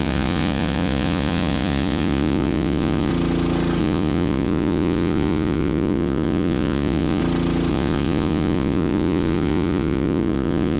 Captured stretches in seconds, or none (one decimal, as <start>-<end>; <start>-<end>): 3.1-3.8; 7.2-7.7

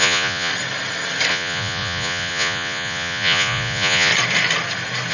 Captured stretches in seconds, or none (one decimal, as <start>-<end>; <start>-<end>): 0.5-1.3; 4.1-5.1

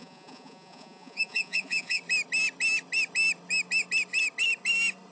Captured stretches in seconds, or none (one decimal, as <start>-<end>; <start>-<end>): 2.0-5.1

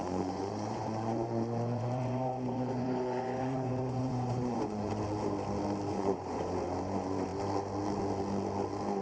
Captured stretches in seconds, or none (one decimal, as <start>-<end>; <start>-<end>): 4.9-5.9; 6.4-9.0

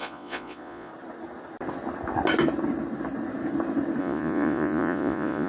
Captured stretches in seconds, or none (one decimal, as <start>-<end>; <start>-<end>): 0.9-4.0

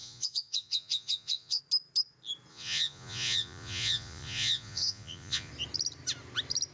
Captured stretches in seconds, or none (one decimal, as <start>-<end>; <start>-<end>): 1.6-2.5; 5.5-6.7